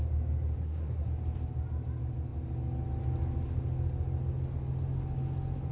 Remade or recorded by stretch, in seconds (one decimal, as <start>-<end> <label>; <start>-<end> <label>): 0.0-0.6 recorded; 0.6-1.1 remade; 1.1-5.7 recorded